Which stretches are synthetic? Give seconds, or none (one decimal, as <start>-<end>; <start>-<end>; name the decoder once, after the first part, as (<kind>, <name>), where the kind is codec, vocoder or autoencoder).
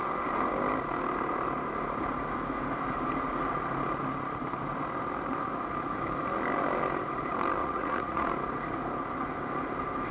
7.6-8.3 (vocoder, Vocos)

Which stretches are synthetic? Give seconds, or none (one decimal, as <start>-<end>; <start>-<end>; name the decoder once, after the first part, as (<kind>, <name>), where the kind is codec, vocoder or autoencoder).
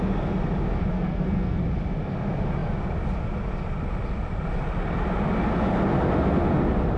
0.9-1.6 (codec, SNAC)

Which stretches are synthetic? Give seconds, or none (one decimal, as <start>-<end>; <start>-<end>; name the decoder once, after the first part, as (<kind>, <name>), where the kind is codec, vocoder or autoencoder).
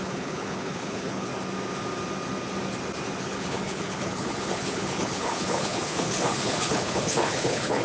0.0-1.3 (codec, HILCodec); 3.2-7.8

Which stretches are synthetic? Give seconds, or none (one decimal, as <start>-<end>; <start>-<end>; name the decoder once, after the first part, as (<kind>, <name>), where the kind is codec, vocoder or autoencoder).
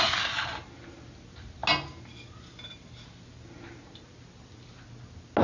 none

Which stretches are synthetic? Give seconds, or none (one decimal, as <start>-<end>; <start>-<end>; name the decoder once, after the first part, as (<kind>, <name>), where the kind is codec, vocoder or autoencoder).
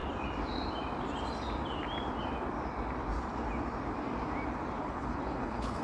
4.8-5.8 (codec, HILCodec)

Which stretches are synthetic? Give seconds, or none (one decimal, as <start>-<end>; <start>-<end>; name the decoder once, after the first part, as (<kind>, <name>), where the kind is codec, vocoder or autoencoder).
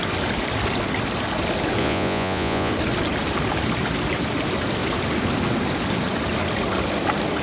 1.8-2.7 (vocoder, Vocos)